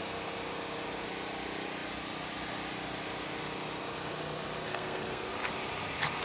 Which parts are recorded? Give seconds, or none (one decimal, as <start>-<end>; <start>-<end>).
0.0-4.7; 5.3-6.2